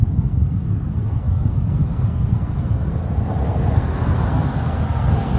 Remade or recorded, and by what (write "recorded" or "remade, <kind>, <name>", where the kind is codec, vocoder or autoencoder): remade, codec, SNAC